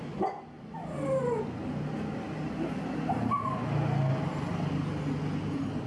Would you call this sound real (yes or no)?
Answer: yes